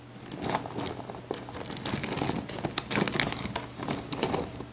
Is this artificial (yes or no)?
no